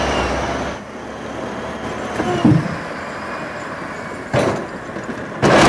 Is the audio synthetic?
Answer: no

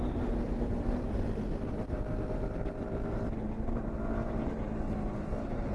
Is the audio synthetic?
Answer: no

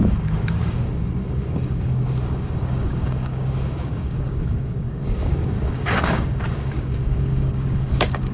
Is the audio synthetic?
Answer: yes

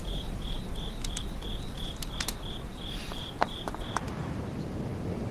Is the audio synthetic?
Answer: no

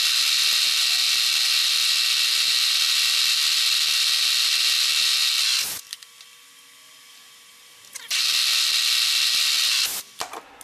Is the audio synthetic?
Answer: no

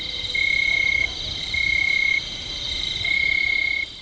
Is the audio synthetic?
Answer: yes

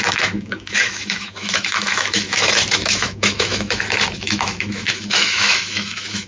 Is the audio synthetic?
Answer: yes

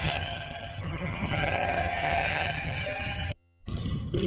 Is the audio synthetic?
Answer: yes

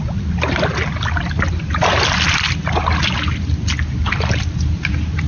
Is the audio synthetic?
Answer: no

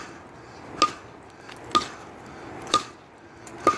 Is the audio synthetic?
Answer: no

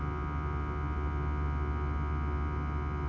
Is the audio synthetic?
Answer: no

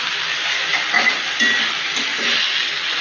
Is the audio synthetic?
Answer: no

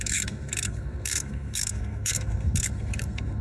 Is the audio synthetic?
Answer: yes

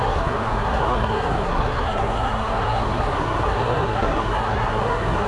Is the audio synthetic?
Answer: yes